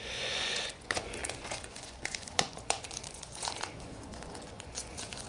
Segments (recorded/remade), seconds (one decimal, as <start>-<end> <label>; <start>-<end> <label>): 0.0-5.3 remade